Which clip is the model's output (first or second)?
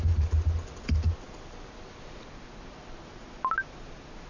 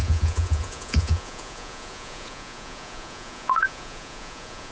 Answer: second